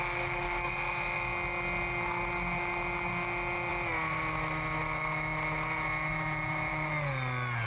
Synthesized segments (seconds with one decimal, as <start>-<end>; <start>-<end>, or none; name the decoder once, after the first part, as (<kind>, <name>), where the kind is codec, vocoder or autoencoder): 6.1-6.9 (vocoder, BigVGAN v2)